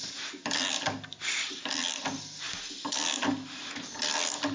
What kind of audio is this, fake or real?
real